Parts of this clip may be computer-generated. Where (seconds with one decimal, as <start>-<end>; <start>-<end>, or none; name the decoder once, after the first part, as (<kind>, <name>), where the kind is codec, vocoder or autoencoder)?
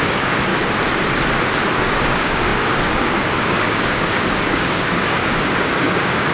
0.0-0.5 (codec, DAC); 1.8-6.3